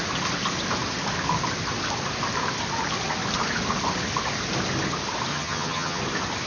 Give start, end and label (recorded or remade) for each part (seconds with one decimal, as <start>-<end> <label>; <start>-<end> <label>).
0.0-5.3 recorded; 5.3-6.0 remade; 6.0-6.5 recorded